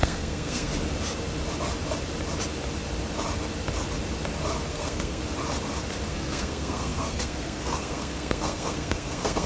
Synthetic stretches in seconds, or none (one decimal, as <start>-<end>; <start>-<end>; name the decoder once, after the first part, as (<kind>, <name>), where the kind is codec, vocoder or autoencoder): 0.0-0.7 (codec, SNAC); 4.7-5.2; 6.1-9.5